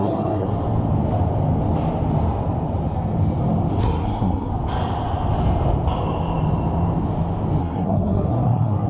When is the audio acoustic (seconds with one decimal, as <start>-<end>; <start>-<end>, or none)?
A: 0.5-3.8; 4.5-7.6